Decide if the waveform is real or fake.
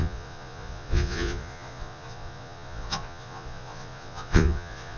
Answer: fake